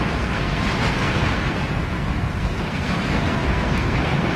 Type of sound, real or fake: fake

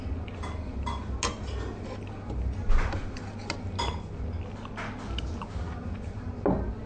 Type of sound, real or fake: real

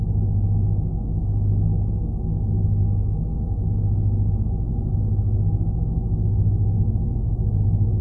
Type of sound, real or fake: fake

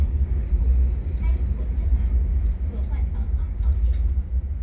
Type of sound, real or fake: real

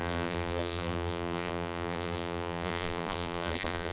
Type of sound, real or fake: fake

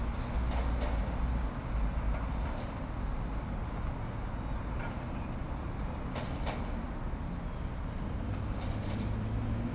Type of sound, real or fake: real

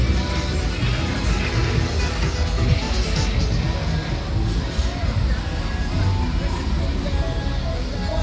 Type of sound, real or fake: real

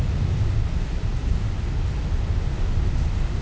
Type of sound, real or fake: real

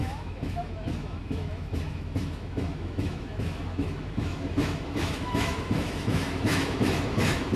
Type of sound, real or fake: fake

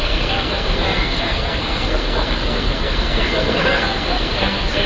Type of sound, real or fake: fake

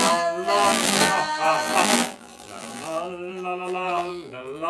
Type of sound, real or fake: fake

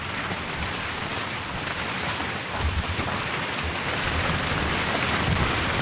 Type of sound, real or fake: real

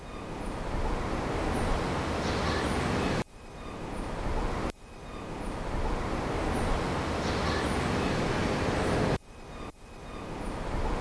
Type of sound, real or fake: real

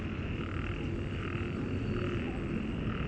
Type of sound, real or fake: real